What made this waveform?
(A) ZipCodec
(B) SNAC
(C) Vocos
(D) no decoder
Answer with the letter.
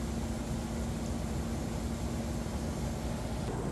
D